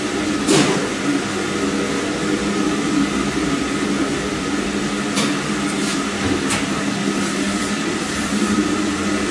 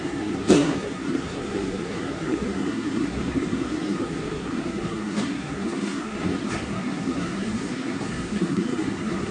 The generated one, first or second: second